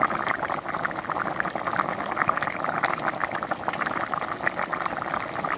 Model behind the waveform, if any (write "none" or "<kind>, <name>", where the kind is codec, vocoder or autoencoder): none